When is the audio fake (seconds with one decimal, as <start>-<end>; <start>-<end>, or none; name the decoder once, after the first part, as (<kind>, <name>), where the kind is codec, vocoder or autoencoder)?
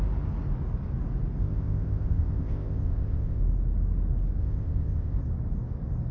1.4-3.4 (codec, ZipCodec); 4.4-5.2